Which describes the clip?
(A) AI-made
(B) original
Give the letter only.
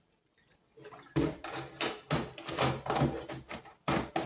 B